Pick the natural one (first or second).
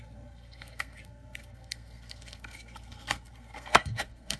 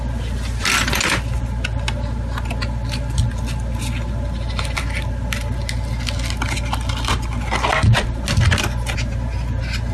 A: second